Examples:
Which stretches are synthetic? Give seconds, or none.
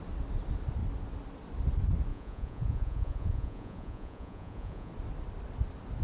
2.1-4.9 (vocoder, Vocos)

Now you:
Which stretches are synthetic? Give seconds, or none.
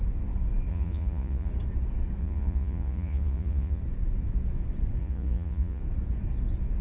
0.7-1.5 (vocoder, Vocos); 2.2-3.8; 5.0-5.8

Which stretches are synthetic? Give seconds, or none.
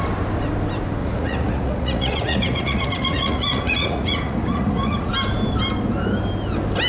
1.0-5.1 (vocoder, Vocos)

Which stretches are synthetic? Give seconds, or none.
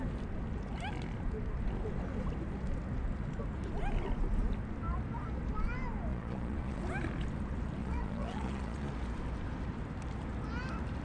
6.1-6.8 (vocoder, Vocos); 7.8-8.9